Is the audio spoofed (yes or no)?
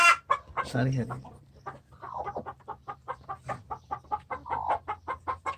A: no